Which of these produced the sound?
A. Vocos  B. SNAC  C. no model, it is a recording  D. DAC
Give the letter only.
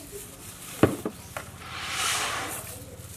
C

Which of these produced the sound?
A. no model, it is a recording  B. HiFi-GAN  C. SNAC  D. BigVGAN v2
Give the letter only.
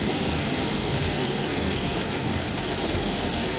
C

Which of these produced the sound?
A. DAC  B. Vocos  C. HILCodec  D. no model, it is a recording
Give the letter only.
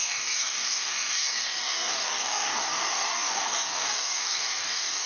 A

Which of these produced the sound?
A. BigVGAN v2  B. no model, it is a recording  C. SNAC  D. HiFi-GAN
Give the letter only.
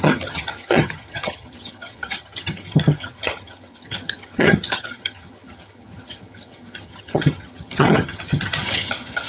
D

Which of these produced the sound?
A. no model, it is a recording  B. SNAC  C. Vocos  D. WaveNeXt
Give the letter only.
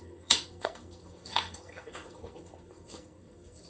B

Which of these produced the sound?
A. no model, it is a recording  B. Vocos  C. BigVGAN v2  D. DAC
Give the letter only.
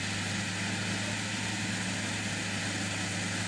A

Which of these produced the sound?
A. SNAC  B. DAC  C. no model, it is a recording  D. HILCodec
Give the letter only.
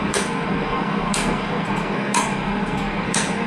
A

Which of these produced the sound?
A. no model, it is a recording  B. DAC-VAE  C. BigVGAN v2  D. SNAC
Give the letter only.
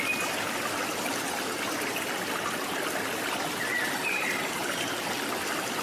A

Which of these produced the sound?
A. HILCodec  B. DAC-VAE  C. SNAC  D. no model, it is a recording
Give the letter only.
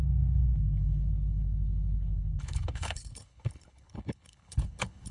A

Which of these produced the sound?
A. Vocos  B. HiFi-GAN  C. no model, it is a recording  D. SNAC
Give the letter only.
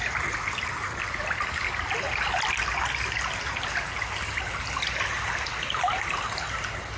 C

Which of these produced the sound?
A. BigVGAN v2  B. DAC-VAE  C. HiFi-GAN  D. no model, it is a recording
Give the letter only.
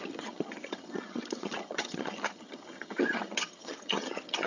C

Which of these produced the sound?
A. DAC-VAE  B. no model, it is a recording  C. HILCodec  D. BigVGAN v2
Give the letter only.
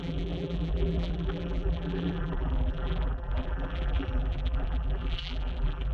D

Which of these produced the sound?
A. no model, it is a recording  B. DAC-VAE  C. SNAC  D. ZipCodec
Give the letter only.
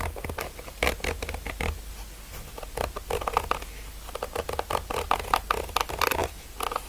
A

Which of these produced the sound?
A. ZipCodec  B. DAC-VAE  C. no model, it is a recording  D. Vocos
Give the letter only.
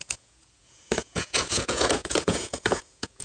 D